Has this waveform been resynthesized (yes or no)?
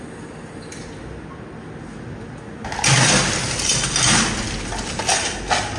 no